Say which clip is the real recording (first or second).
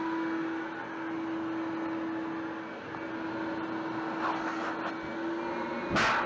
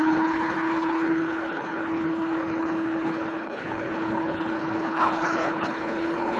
first